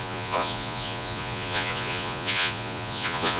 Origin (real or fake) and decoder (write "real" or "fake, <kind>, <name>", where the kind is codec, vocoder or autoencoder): fake, vocoder, Vocos